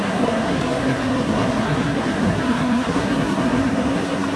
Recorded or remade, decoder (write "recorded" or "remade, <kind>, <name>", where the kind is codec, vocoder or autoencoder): remade, codec, SNAC